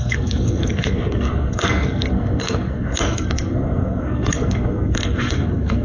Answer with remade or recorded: remade